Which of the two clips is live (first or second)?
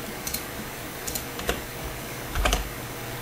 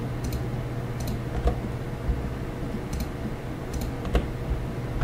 second